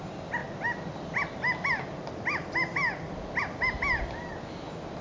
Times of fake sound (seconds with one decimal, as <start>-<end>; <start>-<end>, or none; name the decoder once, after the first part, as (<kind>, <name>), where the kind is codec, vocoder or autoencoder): none